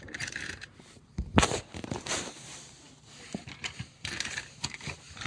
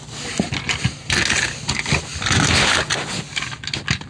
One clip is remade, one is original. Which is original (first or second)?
second